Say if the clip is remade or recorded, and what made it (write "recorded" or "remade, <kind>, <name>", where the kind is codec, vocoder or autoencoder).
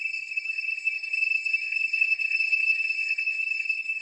remade, codec, HILCodec